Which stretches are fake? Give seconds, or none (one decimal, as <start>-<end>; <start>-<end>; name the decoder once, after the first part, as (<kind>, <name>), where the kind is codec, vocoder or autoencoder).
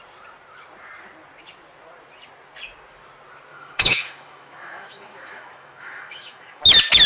3.5-6.6 (autoencoder, DAC-VAE)